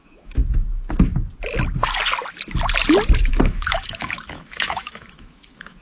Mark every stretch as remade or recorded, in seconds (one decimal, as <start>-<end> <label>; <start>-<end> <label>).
0.0-0.4 remade; 0.4-3.3 recorded; 3.3-5.8 remade